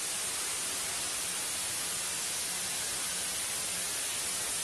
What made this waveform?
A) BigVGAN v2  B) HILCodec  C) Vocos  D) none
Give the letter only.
D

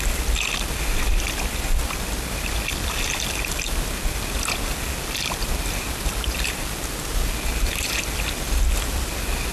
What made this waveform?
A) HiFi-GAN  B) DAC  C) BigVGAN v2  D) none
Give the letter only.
D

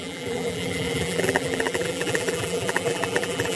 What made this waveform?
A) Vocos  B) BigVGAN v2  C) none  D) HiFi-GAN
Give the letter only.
B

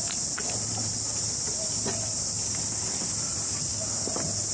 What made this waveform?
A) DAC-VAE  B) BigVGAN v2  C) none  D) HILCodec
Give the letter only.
C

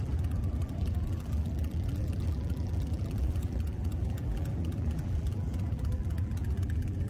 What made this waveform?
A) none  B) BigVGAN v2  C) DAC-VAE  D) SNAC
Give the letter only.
B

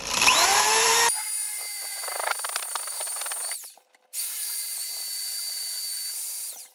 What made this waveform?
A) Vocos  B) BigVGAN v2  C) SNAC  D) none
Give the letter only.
B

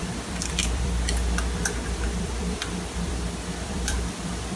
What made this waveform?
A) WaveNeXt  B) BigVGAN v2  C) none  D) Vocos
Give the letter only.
B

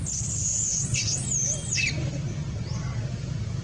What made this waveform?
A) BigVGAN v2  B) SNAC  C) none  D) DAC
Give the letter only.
A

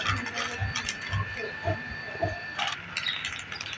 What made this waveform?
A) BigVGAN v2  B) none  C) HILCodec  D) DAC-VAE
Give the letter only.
B